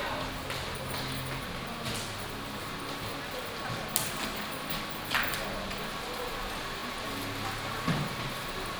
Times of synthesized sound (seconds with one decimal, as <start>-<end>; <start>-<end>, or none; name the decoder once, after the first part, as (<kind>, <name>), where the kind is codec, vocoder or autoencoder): none